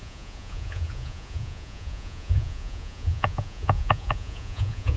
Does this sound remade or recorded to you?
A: remade